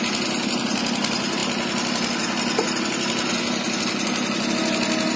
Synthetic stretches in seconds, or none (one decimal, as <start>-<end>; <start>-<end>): none